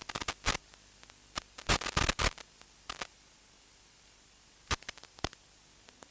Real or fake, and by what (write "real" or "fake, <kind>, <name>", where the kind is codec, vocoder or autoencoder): real